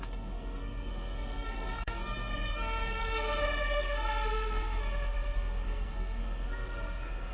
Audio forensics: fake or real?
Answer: fake